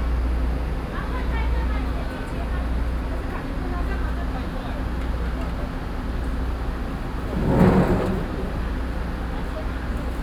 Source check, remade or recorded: recorded